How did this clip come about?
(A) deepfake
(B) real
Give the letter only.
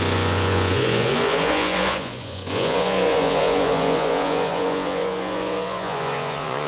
A